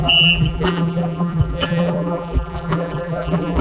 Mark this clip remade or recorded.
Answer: remade